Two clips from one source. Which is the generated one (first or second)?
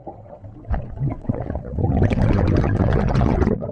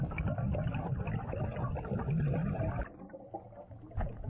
first